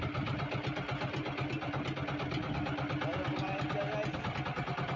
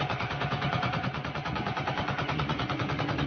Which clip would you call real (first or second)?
first